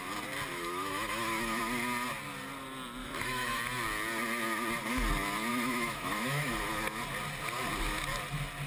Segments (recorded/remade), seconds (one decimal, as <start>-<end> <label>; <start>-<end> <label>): 0.0-0.5 recorded; 0.5-1.6 remade; 1.6-3.0 recorded; 3.0-3.6 remade; 3.6-5.5 recorded; 5.5-6.5 remade; 6.5-8.7 recorded

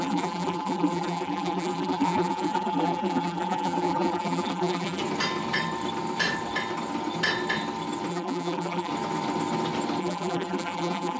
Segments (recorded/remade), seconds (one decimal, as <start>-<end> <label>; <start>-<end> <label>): 0.0-5.0 remade; 5.0-8.1 recorded; 8.1-8.9 remade; 8.9-10.0 recorded; 10.0-11.2 remade